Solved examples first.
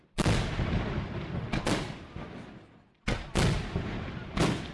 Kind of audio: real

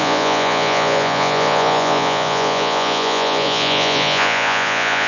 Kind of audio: fake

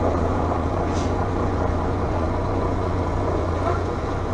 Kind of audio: fake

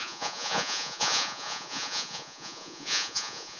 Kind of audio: fake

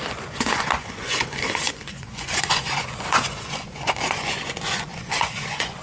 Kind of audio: fake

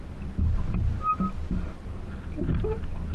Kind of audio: real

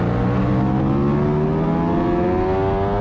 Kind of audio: real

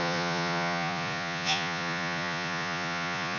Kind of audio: fake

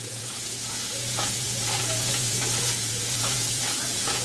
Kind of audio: fake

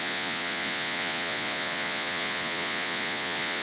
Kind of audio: fake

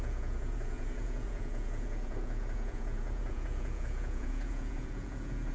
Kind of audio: fake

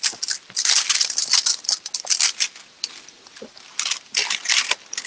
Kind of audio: real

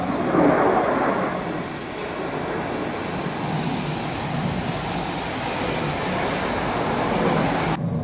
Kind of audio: real